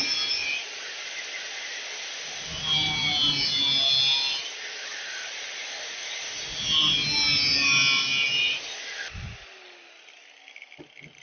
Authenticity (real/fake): real